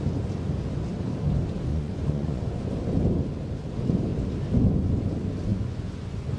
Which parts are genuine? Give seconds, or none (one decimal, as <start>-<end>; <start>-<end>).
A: 0.0-1.7; 2.7-5.5